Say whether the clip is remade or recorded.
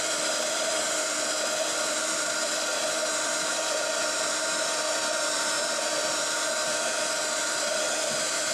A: remade